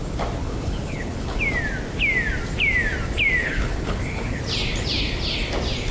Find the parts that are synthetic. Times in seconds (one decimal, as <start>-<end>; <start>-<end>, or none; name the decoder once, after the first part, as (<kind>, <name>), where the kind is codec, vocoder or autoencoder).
0.4-1.4 (codec, HILCodec); 3.4-4.4